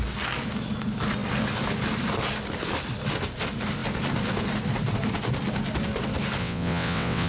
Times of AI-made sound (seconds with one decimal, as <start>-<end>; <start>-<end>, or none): 6.4-7.3